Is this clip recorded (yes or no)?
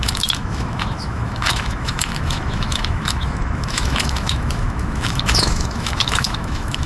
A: no